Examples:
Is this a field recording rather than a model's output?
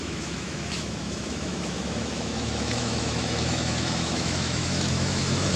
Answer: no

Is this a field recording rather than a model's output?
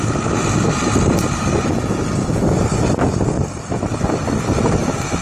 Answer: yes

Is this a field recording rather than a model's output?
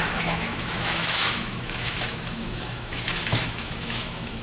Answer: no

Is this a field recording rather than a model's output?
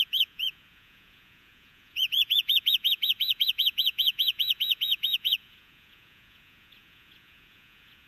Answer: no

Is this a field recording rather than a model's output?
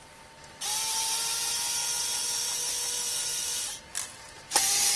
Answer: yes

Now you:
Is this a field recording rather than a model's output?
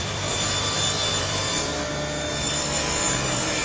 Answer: no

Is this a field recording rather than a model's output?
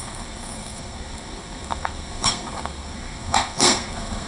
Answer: no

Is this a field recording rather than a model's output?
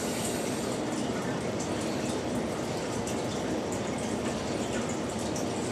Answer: no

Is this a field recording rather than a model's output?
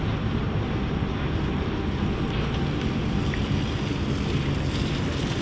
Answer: yes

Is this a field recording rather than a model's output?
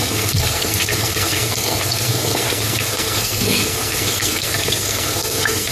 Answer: no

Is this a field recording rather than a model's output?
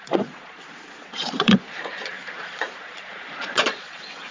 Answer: no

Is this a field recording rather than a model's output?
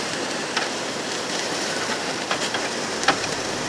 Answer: no